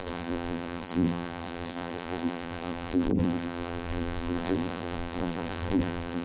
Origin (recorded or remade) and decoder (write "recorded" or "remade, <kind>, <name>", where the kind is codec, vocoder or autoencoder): remade, vocoder, BigVGAN v2